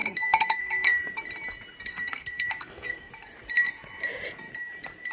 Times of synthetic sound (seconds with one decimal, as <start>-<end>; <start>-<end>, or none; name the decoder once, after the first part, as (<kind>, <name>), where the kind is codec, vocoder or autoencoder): 0.0-1.0 (codec, SNAC); 1.9-3.1